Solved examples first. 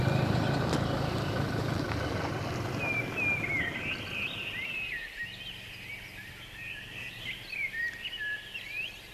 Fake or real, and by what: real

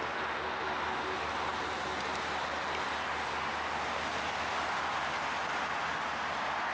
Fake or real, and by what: real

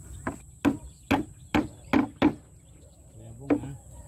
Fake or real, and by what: real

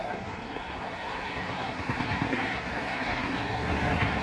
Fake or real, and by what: fake, codec, SNAC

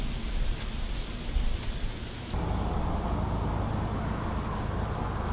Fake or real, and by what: real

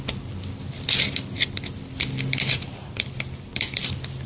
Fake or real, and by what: fake, vocoder, BigVGAN v2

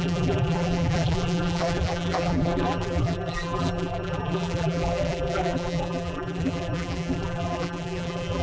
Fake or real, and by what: fake, vocoder, BigVGAN v2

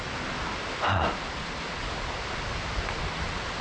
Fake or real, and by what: real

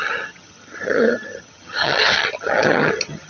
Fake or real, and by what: fake, vocoder, HiFi-GAN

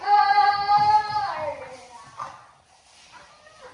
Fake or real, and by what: real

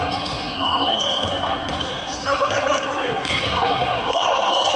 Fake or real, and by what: fake, codec, SNAC